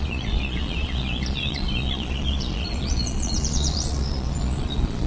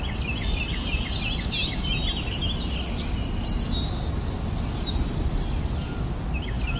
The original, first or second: second